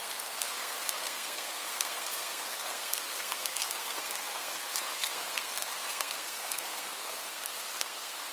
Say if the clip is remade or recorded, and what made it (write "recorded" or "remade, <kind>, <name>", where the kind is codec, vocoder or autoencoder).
remade, codec, SNAC